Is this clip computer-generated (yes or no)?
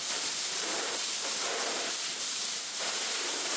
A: yes